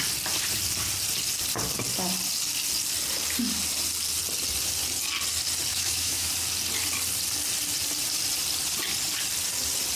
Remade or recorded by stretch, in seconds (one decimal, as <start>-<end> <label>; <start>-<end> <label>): 0.0-5.7 recorded; 5.7-6.3 remade; 6.3-10.0 recorded